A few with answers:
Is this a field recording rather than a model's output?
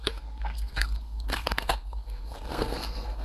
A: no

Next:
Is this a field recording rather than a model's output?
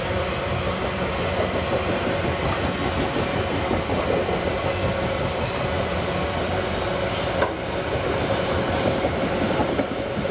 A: yes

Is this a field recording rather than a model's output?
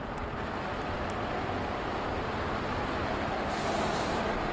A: yes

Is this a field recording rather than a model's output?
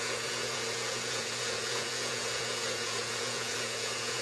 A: no